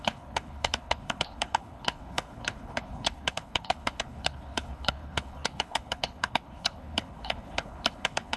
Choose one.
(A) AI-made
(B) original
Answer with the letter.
A